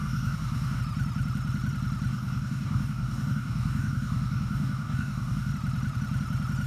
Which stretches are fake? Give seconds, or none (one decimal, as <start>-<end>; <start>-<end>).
0.0-0.8; 2.1-5.5